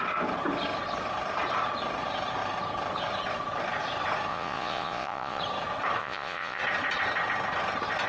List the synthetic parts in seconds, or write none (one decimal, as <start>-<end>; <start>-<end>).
4.3-5.4; 6.0-6.6